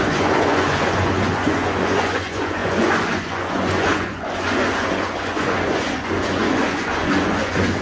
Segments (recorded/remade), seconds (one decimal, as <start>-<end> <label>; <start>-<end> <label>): 0.0-7.8 remade